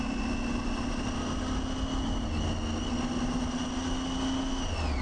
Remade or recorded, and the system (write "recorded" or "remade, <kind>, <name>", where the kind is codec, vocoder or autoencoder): recorded